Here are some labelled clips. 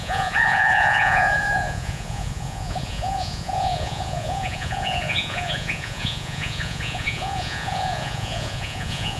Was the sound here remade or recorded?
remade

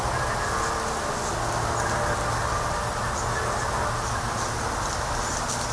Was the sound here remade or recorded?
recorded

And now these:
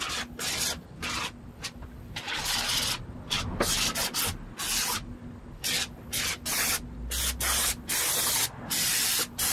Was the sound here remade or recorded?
recorded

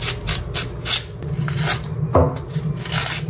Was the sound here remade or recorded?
recorded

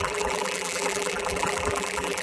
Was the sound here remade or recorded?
remade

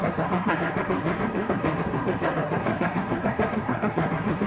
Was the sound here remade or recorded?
remade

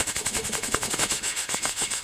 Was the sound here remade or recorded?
remade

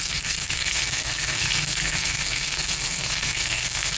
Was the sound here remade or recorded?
remade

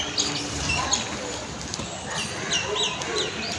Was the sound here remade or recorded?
recorded